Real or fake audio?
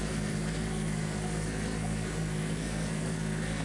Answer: fake